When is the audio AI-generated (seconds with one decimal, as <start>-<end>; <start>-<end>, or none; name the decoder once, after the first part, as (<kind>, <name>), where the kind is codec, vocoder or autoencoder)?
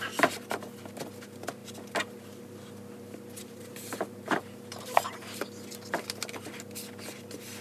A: 3.4-5.4 (vocoder, BigVGAN v2)